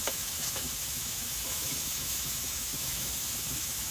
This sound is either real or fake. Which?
fake